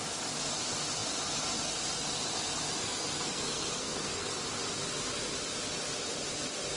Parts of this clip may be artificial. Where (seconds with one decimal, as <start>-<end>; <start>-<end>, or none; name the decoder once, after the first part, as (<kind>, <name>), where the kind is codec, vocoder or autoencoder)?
2.8-4.3 (codec, SNAC)